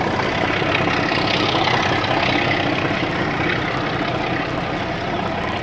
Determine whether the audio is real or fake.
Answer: real